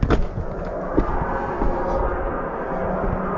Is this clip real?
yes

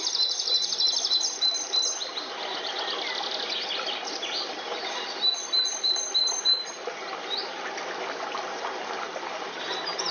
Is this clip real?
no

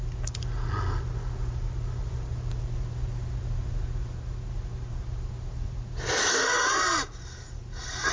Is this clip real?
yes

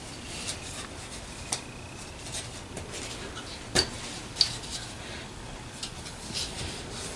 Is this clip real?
yes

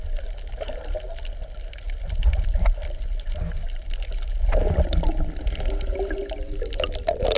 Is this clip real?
yes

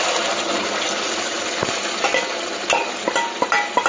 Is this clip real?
yes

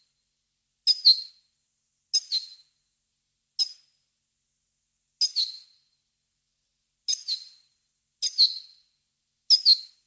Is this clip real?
yes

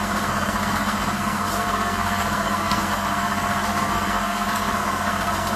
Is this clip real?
no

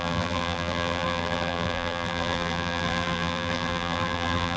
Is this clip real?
no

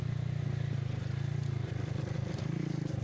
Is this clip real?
yes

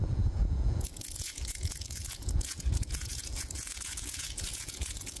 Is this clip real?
no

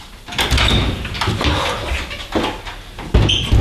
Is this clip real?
yes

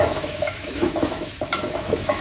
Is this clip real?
no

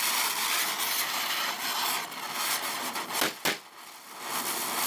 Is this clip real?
yes